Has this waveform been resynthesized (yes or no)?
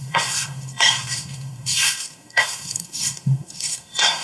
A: yes